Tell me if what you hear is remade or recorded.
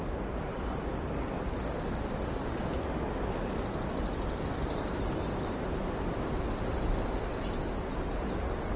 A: recorded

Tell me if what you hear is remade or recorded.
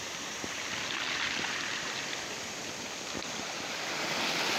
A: recorded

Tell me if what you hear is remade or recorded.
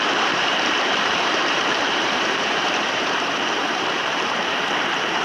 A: remade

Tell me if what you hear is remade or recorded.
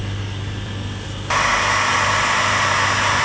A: recorded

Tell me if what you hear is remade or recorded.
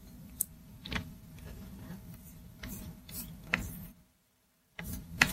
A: remade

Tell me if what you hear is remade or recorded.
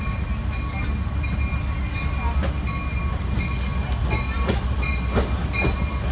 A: recorded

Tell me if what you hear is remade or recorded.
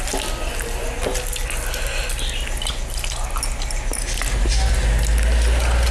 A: recorded